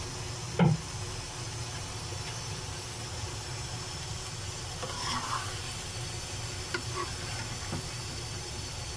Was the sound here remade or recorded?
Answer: recorded